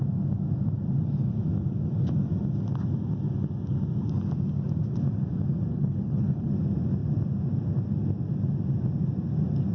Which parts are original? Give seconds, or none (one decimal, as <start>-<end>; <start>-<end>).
0.0-5.7; 6.5-9.7